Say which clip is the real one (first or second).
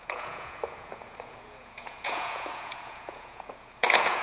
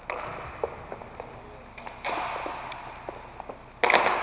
second